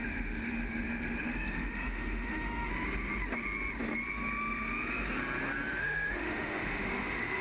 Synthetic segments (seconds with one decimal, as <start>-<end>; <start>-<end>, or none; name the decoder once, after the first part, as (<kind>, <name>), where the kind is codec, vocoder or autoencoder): 0.0-2.7 (autoencoder, DAC-VAE); 5.8-7.4